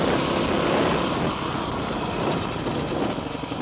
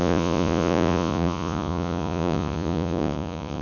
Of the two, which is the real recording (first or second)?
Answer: first